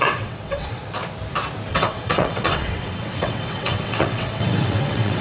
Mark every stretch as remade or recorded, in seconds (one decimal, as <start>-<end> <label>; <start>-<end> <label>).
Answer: 0.0-0.8 remade; 0.8-1.7 recorded; 1.7-5.2 remade